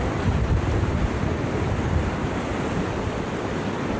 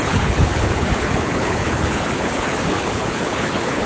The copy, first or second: second